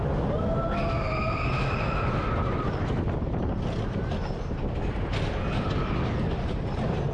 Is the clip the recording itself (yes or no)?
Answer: yes